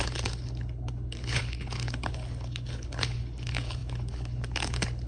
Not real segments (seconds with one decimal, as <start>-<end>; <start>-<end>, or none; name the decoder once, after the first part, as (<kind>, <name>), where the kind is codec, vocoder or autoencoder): 0.0-5.1 (codec, HILCodec)